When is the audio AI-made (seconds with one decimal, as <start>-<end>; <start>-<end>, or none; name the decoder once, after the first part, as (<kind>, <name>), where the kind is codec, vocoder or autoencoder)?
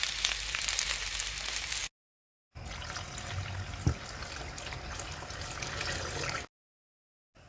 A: none